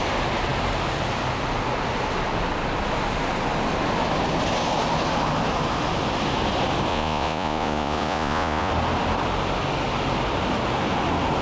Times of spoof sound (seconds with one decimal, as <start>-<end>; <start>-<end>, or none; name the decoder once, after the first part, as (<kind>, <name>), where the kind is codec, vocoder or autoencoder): 6.9-8.7 (vocoder, Vocos)